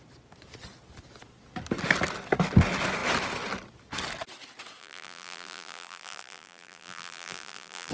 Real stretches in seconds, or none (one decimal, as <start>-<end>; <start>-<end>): 0.0-4.8